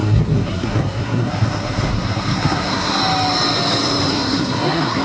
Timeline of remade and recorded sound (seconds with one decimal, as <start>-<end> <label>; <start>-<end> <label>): 0.0-3.0 remade; 3.0-4.1 recorded; 4.1-5.0 remade